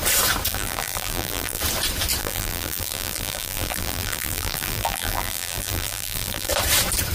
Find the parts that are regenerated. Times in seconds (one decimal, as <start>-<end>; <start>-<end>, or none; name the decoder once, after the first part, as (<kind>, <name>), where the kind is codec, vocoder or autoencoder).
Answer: 0.5-1.6 (vocoder, BigVGAN v2); 2.2-6.5